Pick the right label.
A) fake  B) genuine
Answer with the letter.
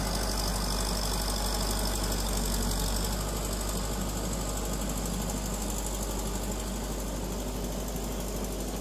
B